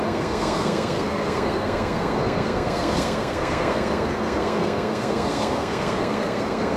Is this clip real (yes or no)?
no